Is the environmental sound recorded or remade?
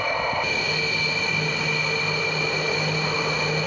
recorded